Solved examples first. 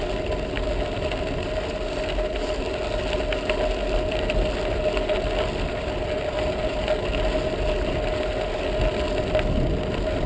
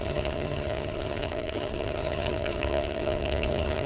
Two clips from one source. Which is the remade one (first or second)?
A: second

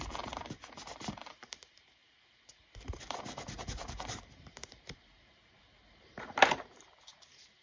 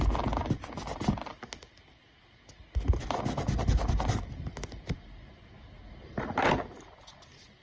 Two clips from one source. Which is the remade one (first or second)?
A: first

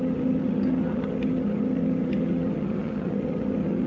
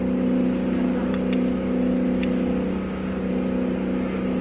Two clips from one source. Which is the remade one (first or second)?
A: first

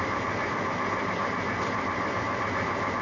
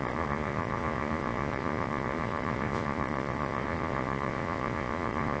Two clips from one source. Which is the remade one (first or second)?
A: second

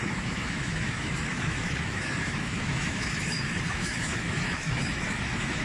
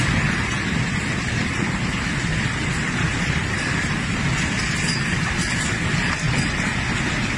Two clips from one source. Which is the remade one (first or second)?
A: first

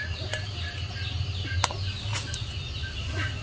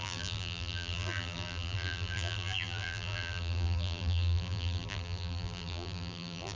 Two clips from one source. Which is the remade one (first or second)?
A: second